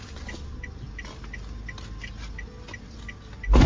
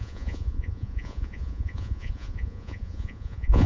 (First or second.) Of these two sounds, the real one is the first